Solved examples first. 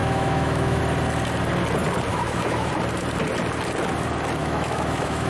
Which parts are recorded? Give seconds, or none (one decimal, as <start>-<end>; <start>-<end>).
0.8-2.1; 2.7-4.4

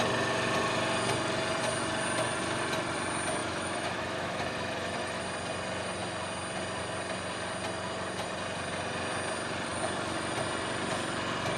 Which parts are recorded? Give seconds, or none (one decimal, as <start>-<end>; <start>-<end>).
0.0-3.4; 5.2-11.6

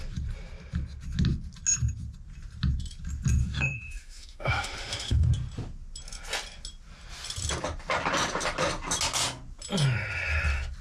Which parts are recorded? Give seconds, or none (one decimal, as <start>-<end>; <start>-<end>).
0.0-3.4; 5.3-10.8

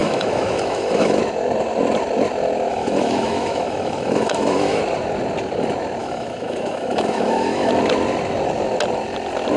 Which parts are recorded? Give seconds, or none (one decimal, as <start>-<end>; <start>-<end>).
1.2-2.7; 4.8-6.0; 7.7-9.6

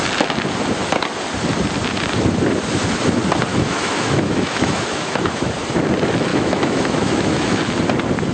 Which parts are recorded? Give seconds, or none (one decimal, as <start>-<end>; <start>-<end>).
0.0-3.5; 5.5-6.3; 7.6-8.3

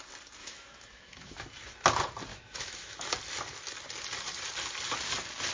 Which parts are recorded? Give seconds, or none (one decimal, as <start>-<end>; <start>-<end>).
0.0-0.4; 1.4-2.3; 3.1-5.5

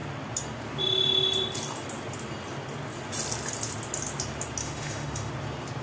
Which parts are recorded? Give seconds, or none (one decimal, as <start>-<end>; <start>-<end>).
0.0-4.6; 5.3-5.8

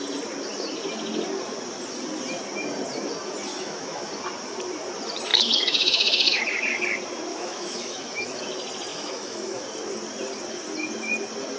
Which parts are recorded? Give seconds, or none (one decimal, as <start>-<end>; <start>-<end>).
0.0-3.5; 4.1-5.3; 6.4-7.3; 8.4-8.9; 9.6-11.6